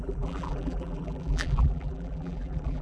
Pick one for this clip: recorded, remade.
remade